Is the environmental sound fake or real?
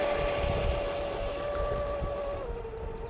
real